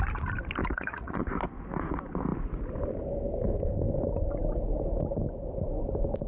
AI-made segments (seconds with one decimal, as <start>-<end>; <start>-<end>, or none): 0.6-1.2